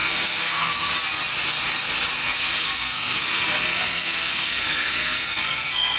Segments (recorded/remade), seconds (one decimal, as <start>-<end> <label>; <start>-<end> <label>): 0.0-0.9 remade; 0.9-2.2 recorded; 2.2-6.0 remade